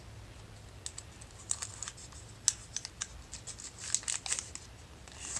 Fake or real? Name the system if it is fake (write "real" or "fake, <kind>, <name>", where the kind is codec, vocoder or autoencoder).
real